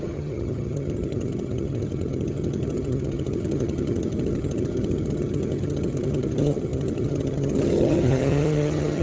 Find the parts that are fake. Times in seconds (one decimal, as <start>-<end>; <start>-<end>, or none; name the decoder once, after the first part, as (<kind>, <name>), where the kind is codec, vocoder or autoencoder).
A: 0.0-9.0 (vocoder, HiFi-GAN)